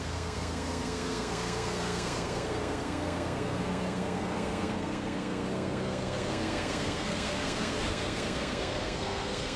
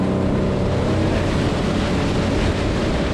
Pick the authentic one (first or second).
second